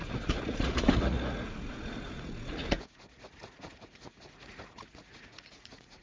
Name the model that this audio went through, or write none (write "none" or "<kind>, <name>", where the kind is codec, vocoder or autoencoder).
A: vocoder, Vocos